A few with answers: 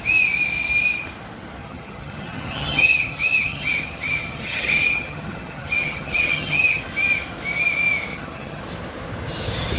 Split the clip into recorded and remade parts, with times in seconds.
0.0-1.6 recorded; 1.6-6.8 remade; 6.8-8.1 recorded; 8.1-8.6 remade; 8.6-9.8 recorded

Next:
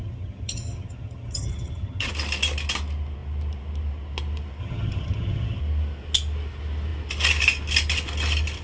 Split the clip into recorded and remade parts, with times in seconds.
0.0-2.1 remade; 2.1-4.6 recorded; 4.6-5.6 remade; 5.6-8.6 recorded

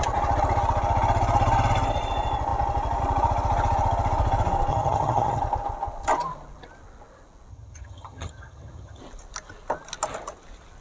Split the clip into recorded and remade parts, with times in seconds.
0.0-4.7 recorded; 4.7-5.4 remade; 5.4-7.5 recorded; 7.5-9.0 remade; 9.0-10.8 recorded

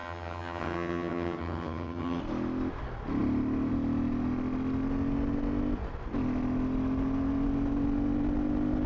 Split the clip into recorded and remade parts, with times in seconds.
0.0-2.2 remade; 2.2-8.9 recorded

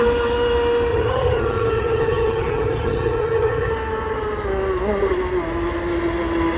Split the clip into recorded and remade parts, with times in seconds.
0.0-0.9 recorded; 0.9-3.7 remade; 3.7-6.6 recorded

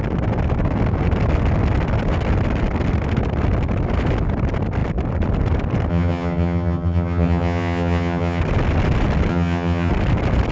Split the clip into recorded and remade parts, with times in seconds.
0.0-5.9 recorded; 5.9-8.4 remade; 8.4-9.3 recorded; 9.3-9.9 remade; 9.9-10.5 recorded